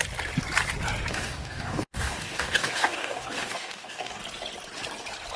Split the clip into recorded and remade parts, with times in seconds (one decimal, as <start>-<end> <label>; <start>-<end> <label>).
0.0-1.1 recorded; 1.1-4.2 remade; 4.2-5.4 recorded